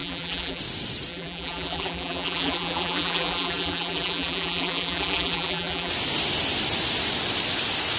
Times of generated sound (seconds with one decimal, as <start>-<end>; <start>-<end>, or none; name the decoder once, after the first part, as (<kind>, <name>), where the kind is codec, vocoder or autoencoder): 0.0-0.6 (vocoder, BigVGAN v2); 1.1-5.9